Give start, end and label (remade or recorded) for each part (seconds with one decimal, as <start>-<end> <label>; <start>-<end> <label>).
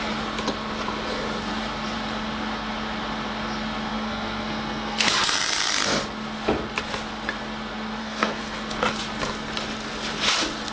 0.0-3.9 recorded; 3.9-5.1 remade; 5.1-8.0 recorded; 8.0-8.6 remade; 8.6-10.7 recorded